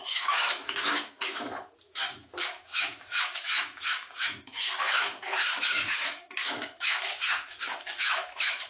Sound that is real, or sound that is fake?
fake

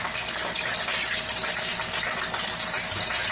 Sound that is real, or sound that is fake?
real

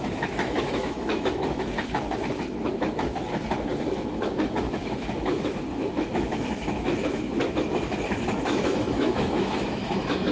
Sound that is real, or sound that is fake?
fake